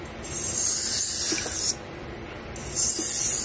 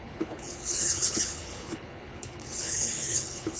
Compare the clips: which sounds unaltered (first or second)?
first